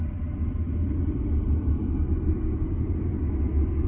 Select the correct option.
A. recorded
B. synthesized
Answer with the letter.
A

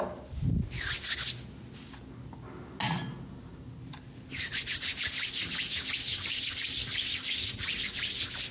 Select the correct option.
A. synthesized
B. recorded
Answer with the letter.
B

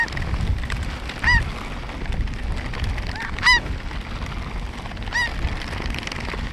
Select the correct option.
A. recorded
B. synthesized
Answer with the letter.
A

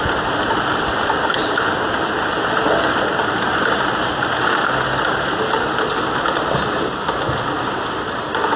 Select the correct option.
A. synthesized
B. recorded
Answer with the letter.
B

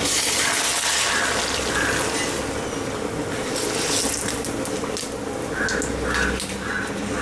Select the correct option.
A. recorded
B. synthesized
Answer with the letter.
A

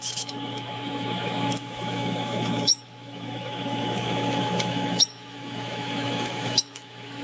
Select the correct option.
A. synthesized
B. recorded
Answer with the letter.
A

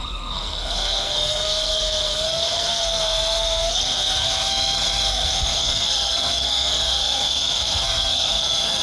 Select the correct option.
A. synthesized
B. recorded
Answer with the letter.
A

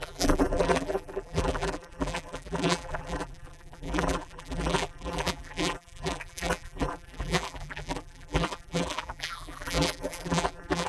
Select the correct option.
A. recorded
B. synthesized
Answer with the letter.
B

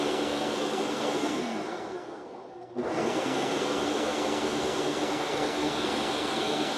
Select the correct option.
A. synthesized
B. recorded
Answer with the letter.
A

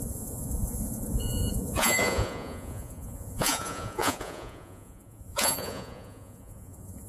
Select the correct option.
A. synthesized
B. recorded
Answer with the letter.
A